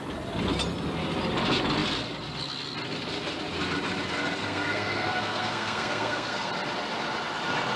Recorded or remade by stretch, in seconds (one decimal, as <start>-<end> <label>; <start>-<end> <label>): 0.0-4.4 recorded; 4.4-6.5 remade; 6.5-7.8 recorded